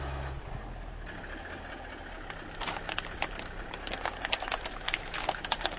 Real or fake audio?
real